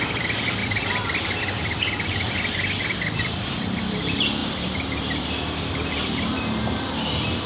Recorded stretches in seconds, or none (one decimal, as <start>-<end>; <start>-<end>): 0.0-0.6; 3.8-4.4; 5.6-7.5